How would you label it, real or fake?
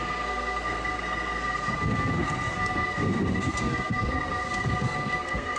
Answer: fake